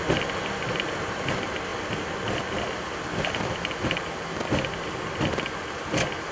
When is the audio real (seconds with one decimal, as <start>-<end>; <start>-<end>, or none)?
0.0-6.3